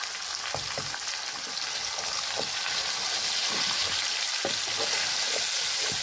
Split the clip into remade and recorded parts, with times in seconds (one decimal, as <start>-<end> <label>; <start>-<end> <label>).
0.0-6.0 recorded